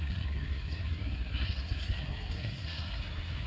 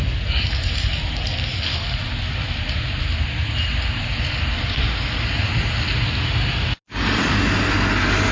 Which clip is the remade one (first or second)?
first